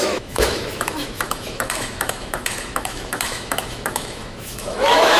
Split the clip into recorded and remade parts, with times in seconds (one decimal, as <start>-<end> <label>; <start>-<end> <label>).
0.0-5.2 remade